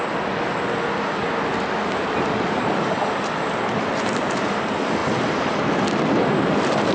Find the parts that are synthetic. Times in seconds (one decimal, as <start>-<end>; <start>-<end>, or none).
none